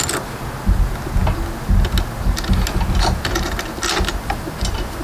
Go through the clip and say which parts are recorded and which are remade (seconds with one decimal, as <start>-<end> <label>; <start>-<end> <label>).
0.0-5.0 recorded